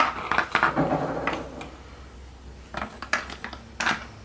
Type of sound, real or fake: real